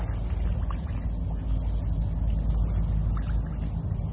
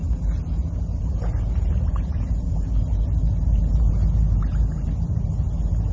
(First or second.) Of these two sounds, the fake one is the second